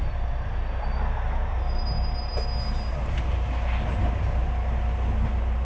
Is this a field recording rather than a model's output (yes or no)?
yes